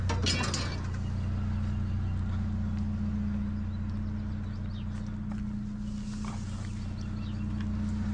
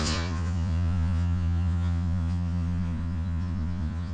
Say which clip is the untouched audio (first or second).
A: first